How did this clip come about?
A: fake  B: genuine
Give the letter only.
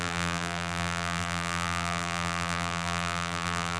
A